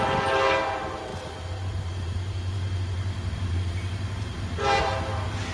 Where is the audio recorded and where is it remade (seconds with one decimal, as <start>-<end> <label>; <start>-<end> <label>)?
0.0-1.1 recorded; 1.1-4.4 remade; 4.4-5.5 recorded